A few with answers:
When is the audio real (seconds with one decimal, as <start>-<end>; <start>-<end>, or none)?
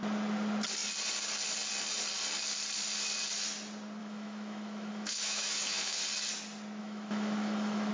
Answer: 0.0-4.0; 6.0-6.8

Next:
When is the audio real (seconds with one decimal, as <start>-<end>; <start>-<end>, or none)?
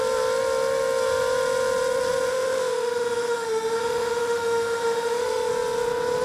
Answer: 0.0-2.3; 5.5-6.2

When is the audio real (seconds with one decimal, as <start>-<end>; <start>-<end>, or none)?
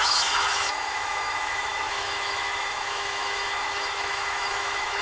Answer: none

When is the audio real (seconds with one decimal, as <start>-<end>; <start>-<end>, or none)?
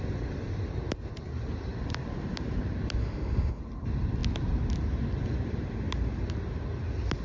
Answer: 0.0-3.0; 3.6-7.2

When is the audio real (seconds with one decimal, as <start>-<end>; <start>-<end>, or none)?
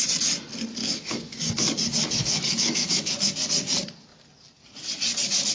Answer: 0.0-0.8; 1.4-2.2; 3.3-5.5